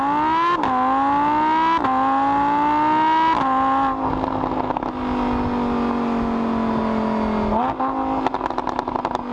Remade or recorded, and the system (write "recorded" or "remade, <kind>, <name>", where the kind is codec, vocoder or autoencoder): recorded